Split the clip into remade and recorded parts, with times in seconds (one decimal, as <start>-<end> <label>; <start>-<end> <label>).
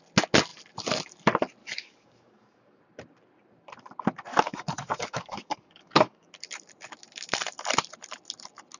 0.0-1.6 recorded; 1.6-2.8 remade; 2.8-4.3 recorded; 4.3-6.3 remade; 6.3-8.8 recorded